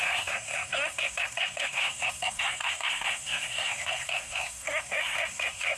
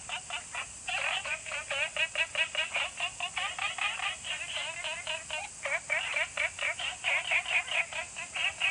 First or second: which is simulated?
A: first